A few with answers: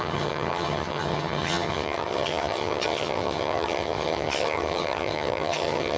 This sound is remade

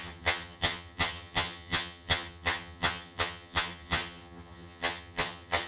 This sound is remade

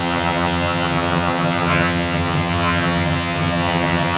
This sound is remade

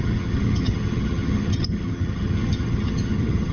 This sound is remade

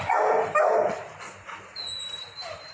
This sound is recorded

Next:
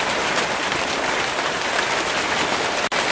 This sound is recorded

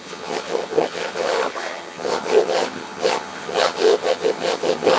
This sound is remade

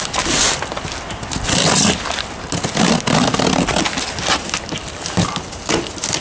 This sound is recorded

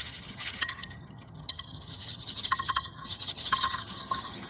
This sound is remade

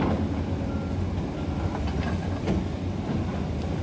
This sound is recorded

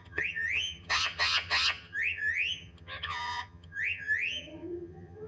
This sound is remade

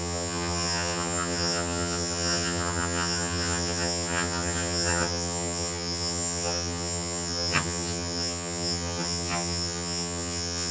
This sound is remade